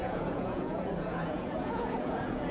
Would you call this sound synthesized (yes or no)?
yes